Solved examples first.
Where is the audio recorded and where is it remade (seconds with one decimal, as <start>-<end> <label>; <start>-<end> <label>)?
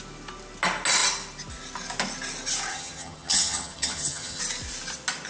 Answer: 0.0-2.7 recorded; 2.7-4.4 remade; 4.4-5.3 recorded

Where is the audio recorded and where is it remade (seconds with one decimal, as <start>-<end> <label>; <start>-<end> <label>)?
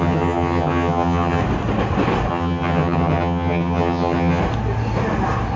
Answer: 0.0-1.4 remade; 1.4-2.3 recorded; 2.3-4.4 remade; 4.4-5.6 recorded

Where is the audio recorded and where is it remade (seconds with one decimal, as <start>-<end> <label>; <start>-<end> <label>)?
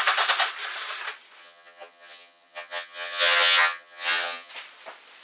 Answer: 0.0-1.4 recorded; 1.4-4.5 remade; 4.5-5.2 recorded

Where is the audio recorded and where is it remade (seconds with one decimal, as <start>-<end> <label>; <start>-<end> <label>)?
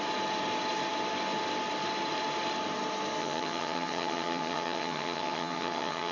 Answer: 0.0-3.2 recorded; 3.2-6.1 remade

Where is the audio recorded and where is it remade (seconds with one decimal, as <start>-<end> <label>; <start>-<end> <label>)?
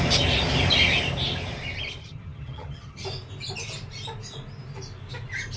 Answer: 0.0-2.0 recorded; 2.0-3.0 remade; 3.0-5.6 recorded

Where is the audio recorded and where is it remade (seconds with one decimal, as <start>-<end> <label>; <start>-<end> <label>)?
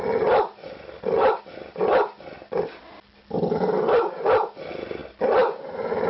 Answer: 0.0-6.1 recorded